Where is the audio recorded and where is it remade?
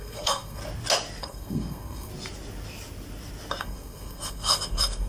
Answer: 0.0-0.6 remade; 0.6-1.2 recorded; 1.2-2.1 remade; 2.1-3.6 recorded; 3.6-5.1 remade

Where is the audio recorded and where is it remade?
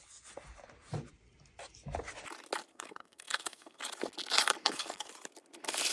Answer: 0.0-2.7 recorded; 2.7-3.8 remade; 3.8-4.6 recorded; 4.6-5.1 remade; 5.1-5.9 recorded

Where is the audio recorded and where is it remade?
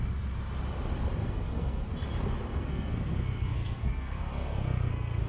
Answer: 0.0-1.2 recorded; 1.2-1.9 remade; 1.9-2.5 recorded; 2.5-5.3 remade